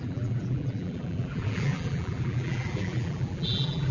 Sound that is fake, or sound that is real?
fake